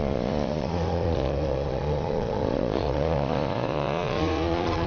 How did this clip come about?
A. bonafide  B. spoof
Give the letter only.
B